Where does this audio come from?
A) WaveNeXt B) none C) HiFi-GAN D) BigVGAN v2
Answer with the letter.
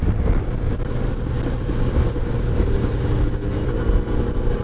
B